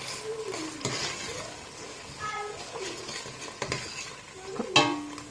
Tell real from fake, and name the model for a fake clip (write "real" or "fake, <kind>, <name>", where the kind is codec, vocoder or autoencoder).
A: real